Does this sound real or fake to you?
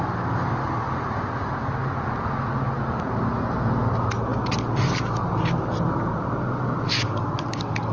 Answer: real